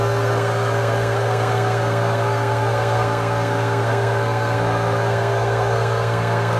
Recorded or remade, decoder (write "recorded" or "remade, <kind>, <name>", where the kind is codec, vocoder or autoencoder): remade, codec, SNAC